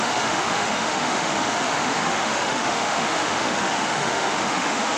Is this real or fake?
fake